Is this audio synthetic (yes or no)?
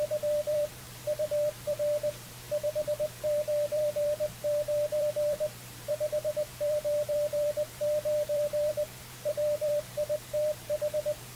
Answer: yes